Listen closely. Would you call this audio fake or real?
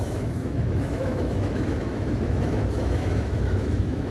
fake